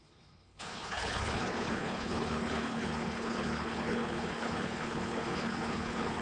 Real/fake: fake